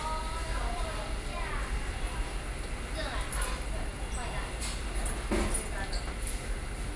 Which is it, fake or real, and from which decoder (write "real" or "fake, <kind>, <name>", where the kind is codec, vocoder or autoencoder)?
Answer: real